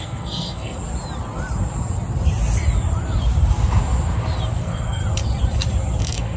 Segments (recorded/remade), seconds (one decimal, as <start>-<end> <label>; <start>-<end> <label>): 0.0-0.8 remade; 0.8-4.6 recorded; 4.6-5.0 remade; 5.0-6.0 recorded; 6.0-6.4 remade